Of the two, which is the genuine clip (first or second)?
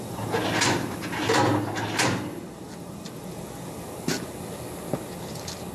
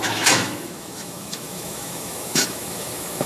first